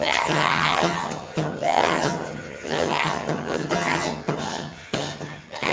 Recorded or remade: remade